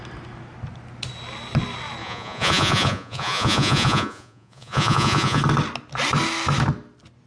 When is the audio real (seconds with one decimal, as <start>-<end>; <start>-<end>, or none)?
0.0-2.0; 5.4-7.3